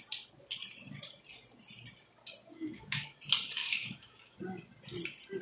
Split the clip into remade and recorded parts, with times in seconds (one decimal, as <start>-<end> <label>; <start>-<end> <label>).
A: 0.0-2.5 recorded; 2.5-3.2 remade; 3.2-3.6 recorded; 3.6-4.4 remade; 4.4-5.4 recorded